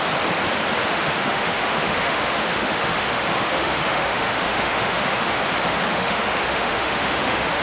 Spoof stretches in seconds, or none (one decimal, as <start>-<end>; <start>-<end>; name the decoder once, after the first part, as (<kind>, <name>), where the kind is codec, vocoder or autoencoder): 0.8-5.4 (autoencoder, DAC-VAE); 5.9-7.6